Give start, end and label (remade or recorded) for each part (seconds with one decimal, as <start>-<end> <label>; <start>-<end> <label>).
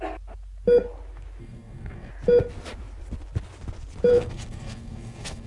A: 0.0-1.4 recorded; 1.4-2.1 remade; 2.1-4.1 recorded; 4.1-5.5 remade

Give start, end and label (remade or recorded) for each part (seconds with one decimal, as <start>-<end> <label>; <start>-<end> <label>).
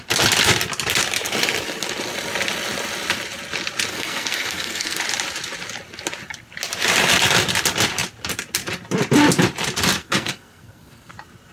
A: 0.0-3.9 recorded; 3.9-5.0 remade; 5.0-10.0 recorded; 10.0-11.1 remade; 11.1-11.5 recorded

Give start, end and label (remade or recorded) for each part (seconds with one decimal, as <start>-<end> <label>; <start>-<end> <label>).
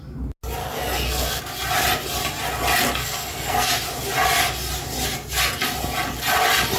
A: 0.0-0.6 recorded; 0.6-1.4 remade; 1.4-3.0 recorded; 3.0-3.8 remade; 3.8-6.8 recorded